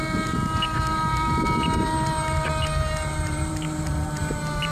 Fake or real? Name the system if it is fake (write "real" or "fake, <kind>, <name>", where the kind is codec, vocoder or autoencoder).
fake, vocoder, BigVGAN v2